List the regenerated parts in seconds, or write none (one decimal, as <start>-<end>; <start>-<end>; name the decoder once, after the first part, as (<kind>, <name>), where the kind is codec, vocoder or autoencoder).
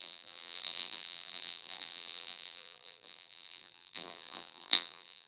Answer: 0.0-5.3 (vocoder, BigVGAN v2)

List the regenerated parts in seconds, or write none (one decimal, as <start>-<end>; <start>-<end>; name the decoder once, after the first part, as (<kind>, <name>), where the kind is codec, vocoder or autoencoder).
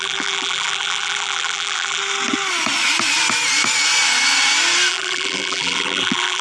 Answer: 0.0-2.0 (vocoder, BigVGAN v2); 4.9-6.4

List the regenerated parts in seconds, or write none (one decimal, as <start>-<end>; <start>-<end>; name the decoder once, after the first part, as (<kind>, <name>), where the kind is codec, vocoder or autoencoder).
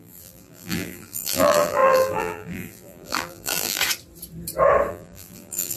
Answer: 0.0-3.8 (vocoder, BigVGAN v2); 4.9-5.8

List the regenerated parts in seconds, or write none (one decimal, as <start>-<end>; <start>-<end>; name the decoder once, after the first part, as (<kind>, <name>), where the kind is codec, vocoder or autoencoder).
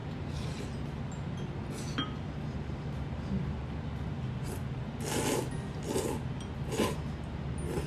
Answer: 0.0-0.5 (vocoder, BigVGAN v2)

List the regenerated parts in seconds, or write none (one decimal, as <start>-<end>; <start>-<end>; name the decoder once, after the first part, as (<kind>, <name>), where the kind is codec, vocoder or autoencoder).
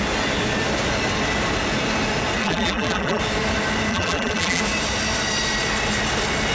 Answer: 2.4-3.2 (vocoder, BigVGAN v2); 3.9-4.6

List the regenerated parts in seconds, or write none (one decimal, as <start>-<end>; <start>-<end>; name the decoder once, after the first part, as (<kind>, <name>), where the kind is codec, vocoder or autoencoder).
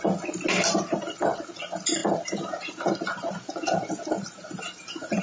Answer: 2.0-5.2 (vocoder, BigVGAN v2)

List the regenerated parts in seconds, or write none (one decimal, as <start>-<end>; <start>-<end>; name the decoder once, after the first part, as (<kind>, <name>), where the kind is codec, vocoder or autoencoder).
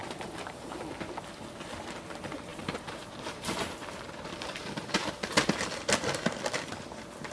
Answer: 0.0-0.8 (vocoder, BigVGAN v2); 2.5-5.1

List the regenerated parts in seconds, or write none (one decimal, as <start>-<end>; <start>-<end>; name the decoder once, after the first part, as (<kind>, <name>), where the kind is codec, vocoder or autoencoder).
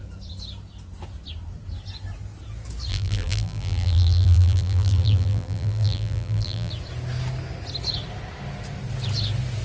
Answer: 2.9-6.7 (vocoder, BigVGAN v2)